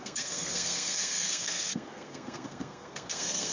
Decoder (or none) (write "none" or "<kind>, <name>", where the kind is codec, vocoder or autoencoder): codec, SNAC